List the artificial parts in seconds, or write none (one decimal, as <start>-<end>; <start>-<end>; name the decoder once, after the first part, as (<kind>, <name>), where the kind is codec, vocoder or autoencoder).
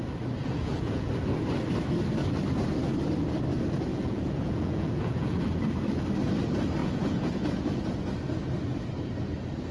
0.4-1.1 (vocoder, Vocos); 3.9-5.4; 6.8-7.8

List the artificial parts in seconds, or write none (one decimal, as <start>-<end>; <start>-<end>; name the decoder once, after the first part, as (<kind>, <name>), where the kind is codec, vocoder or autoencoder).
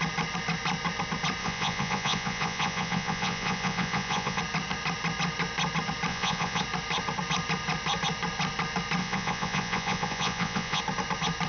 1.4-4.4 (vocoder, Vocos); 6.1-6.6; 9.0-10.8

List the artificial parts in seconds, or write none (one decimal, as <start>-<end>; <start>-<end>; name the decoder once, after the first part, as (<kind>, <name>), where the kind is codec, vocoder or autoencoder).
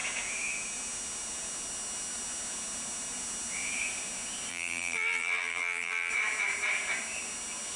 4.5-6.1 (vocoder, BigVGAN v2)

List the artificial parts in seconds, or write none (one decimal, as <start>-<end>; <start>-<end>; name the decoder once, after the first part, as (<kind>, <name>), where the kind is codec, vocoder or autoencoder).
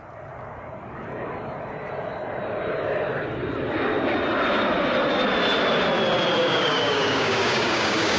6.4-8.2 (codec, DAC)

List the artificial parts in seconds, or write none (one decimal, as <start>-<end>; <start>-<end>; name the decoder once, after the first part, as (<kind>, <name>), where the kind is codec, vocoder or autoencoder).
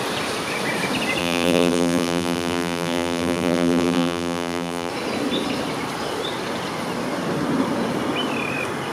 1.2-4.9 (vocoder, BigVGAN v2)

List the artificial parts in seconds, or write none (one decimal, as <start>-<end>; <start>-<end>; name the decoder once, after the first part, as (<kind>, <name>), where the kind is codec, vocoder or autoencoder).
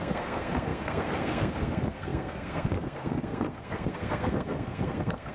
0.0-5.3 (codec, SNAC)